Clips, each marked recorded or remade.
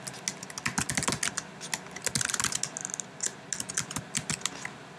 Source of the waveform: recorded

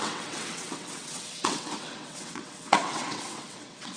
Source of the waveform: remade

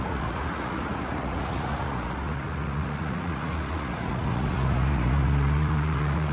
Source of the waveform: remade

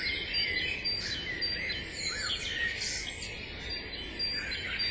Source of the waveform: recorded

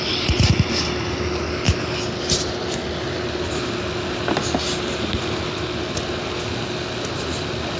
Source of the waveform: recorded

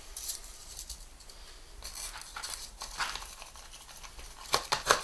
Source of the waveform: recorded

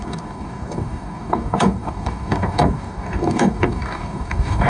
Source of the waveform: remade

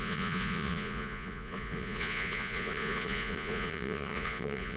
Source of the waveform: remade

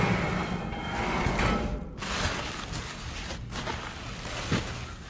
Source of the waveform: recorded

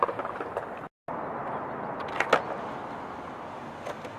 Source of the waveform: recorded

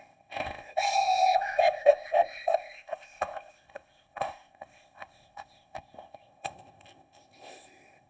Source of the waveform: remade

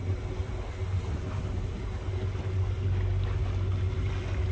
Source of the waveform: recorded